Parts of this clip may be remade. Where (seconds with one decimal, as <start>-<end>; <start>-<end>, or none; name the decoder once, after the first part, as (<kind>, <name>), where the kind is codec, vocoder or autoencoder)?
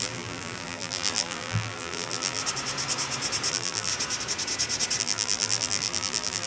0.0-2.4 (vocoder, BigVGAN v2); 3.5-3.9; 5.0-6.5